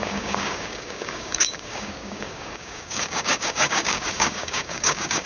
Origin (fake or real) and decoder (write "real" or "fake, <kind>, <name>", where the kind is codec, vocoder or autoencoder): fake, codec, DAC